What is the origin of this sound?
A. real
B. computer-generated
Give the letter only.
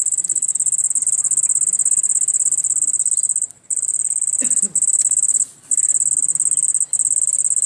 A